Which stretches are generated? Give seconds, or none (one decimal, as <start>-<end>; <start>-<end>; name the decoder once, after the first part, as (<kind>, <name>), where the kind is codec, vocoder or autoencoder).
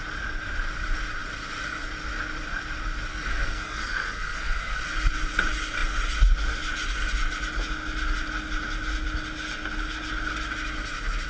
3.1-4.8 (codec, SNAC)